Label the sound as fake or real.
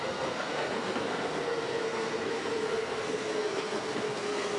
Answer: fake